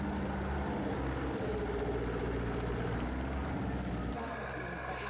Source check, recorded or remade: recorded